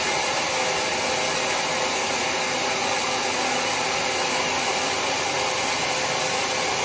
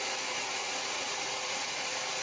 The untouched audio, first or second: first